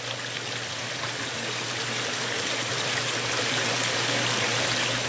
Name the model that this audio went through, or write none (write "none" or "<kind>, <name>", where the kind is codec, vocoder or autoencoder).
none